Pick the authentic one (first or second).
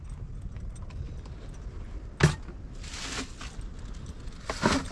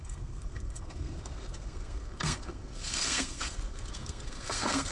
first